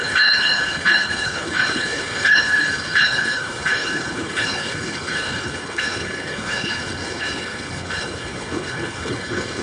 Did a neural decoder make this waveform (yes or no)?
yes